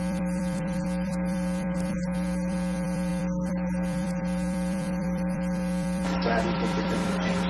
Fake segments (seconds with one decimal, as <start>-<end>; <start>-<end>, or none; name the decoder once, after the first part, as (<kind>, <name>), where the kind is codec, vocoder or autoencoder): 0.0-7.5 (vocoder, BigVGAN v2)